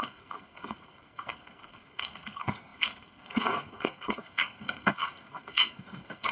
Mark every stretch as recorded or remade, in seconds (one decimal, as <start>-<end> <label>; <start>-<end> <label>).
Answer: 0.0-6.3 remade

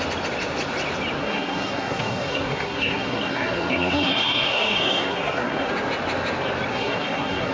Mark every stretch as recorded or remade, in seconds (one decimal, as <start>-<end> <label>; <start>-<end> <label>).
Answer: 0.0-1.2 recorded; 1.2-5.7 remade; 5.7-6.7 recorded; 6.7-7.5 remade

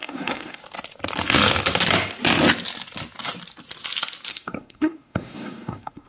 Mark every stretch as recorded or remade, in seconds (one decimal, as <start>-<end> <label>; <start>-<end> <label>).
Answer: 0.0-0.6 remade; 0.6-4.3 recorded; 4.3-6.1 remade

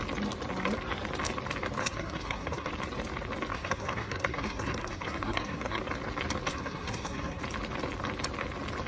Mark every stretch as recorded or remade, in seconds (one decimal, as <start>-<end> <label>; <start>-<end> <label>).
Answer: 0.0-1.8 recorded; 1.8-2.7 remade; 2.7-3.5 recorded; 3.5-5.8 remade; 5.8-6.5 recorded; 6.5-7.4 remade; 7.4-8.9 recorded

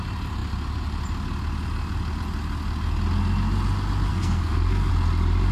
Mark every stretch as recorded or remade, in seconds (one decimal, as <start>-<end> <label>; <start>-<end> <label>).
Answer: 0.0-4.1 recorded; 4.1-4.9 remade; 4.9-5.5 recorded

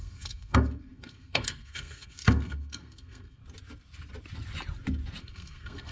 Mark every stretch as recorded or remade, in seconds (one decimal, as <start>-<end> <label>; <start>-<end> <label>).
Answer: 0.0-3.4 remade; 3.4-5.2 recorded; 5.2-5.9 remade

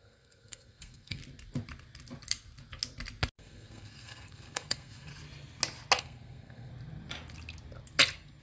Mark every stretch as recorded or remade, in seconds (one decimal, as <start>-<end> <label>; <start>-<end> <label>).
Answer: 0.0-1.2 remade; 1.2-3.4 recorded; 3.4-5.1 remade; 5.1-6.0 recorded; 6.0-6.7 remade; 6.7-8.4 recorded

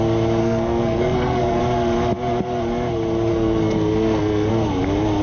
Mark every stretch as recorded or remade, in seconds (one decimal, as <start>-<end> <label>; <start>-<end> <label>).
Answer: 0.0-0.4 recorded; 0.4-1.6 remade; 1.6-3.3 recorded; 3.3-4.5 remade; 4.5-5.2 recorded